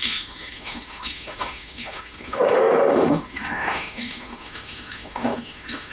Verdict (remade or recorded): remade